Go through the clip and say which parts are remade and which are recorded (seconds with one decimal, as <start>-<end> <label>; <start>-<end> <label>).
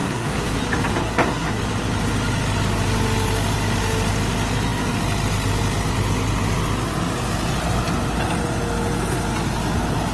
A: 0.0-0.6 remade; 0.6-1.0 recorded; 1.0-1.6 remade; 1.6-10.1 recorded